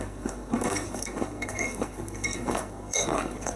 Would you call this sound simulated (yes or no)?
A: yes